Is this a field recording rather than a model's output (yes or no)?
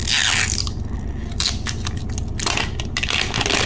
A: yes